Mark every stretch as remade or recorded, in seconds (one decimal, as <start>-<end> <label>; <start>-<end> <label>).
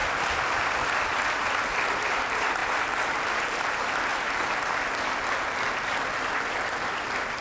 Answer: 0.0-7.4 recorded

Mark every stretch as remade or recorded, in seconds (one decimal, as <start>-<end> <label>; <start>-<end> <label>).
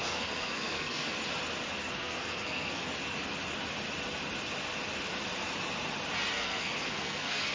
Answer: 0.0-1.2 remade; 1.2-1.8 recorded; 1.8-2.8 remade; 2.8-6.3 recorded; 6.3-7.5 remade